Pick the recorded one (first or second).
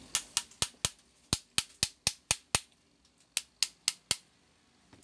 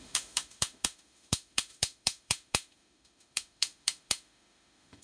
first